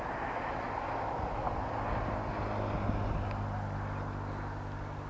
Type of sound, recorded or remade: recorded